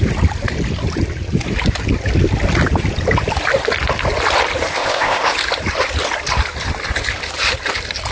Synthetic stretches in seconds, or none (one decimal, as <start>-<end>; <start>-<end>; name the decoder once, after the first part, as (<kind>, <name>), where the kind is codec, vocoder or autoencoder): 4.7-5.3 (codec, ZipCodec)